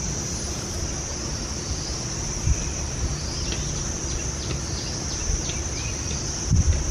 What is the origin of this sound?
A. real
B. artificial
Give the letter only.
A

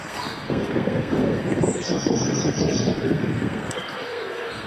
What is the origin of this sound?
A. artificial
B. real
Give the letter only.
A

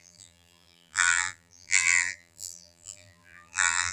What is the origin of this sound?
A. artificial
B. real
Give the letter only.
A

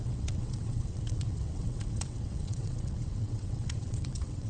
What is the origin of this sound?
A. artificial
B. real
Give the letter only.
A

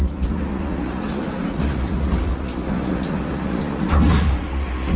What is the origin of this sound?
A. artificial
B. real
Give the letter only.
A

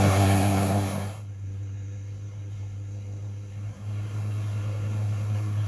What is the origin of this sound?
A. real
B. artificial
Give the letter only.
B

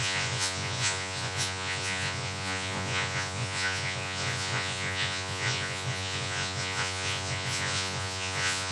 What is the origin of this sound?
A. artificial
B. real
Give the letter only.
A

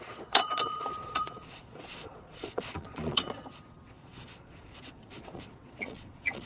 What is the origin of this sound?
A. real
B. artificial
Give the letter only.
B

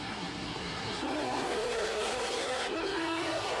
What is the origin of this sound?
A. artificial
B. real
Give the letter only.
A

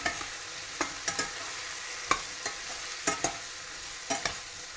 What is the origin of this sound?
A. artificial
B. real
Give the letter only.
B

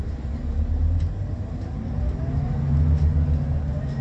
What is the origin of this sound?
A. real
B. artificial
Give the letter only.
A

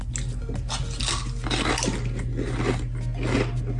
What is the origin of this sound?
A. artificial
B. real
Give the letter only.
B